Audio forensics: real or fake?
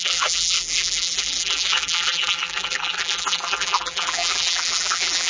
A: fake